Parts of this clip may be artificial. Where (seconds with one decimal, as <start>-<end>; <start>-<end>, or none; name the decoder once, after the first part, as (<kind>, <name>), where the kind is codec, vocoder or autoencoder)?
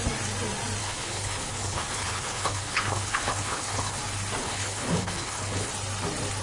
0.8-4.0 (codec, HILCodec); 4.4-5.7